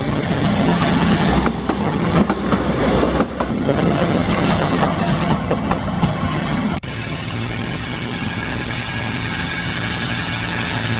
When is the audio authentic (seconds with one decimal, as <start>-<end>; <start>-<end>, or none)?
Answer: 1.3-1.8; 2.2-3.5